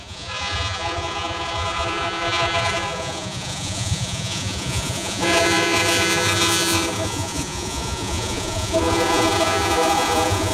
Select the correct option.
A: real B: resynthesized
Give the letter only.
B